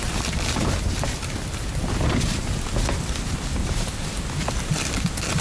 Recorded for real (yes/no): no